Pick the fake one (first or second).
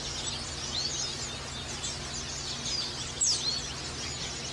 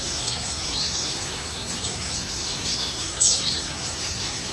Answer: second